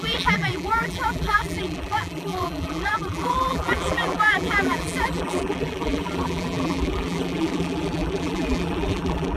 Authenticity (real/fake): fake